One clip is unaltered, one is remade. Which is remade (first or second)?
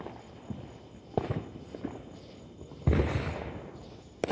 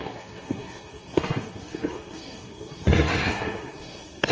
second